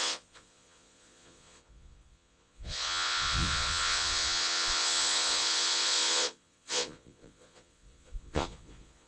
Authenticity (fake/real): fake